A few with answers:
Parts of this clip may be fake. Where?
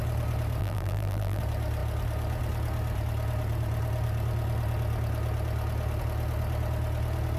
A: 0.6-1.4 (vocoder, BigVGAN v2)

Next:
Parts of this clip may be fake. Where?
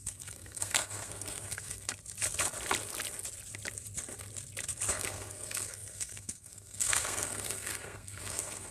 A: 0.0-1.9 (codec, SNAC); 4.9-8.7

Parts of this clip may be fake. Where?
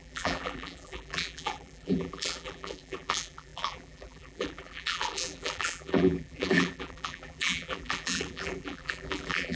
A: 0.0-9.6 (vocoder, BigVGAN v2)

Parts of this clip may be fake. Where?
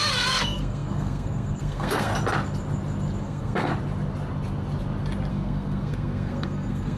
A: 0.0-2.1 (codec, SNAC); 3.2-3.7; 5.3-7.0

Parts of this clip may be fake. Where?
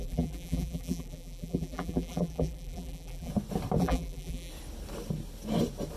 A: 0.0-3.3 (vocoder, BigVGAN v2); 3.8-4.5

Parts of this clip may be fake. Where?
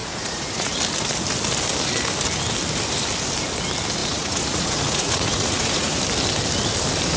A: 0.0-0.7 (vocoder, Vocos); 4.0-6.0